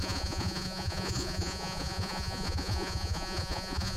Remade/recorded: remade